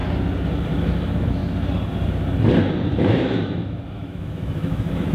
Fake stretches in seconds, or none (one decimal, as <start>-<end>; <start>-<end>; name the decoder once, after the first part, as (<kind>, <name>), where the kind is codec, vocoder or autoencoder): 0.8-1.4 (autoencoder, DAC-VAE); 2.9-5.1